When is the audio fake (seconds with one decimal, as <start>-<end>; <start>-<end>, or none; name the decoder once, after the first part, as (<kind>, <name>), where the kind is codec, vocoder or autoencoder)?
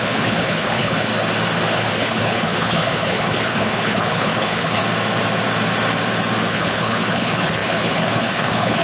0.0-1.1 (codec, HILCodec); 1.8-4.8; 6.5-8.8